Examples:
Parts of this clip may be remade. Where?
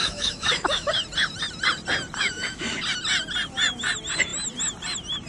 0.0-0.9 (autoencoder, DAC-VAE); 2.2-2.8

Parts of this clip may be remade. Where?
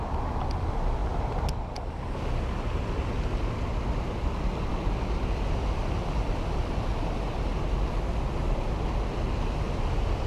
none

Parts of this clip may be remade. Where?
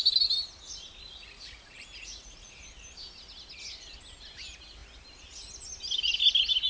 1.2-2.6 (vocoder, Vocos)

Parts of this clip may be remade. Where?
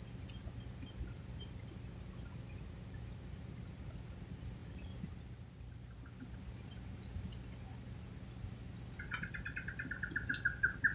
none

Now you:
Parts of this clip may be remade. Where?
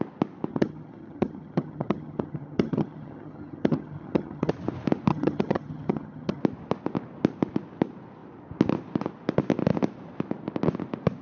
0.5-4.5 (vocoder, HiFi-GAN); 5.1-6.4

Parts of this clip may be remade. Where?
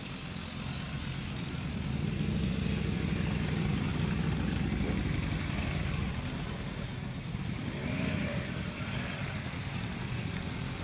0.0-10.8 (vocoder, BigVGAN v2)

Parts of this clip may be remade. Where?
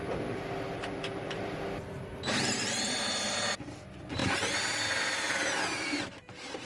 none